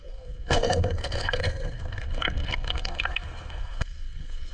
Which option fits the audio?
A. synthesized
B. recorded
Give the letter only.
A